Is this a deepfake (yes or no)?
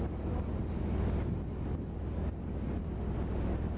no